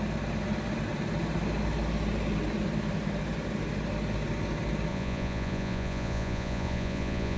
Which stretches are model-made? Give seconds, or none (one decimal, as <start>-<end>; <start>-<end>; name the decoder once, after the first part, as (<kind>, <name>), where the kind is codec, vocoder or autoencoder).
4.9-7.4 (vocoder, Vocos)